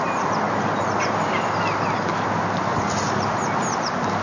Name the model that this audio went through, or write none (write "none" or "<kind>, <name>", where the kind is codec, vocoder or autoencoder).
none